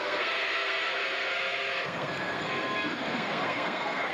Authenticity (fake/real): fake